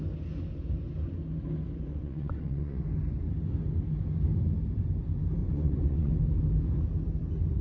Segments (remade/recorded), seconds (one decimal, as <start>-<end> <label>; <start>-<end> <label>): 0.0-1.9 recorded; 1.9-2.8 remade; 2.8-5.4 recorded; 5.4-6.1 remade; 6.1-7.6 recorded